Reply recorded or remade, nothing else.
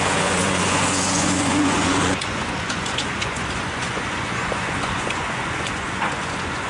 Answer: remade